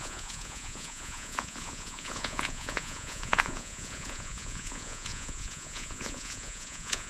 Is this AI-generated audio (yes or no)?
yes